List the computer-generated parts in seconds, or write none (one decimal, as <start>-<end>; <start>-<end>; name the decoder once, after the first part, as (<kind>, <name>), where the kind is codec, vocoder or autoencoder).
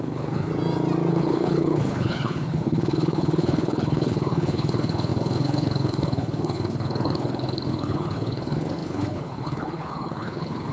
0.0-0.5 (codec, HILCodec); 1.1-10.7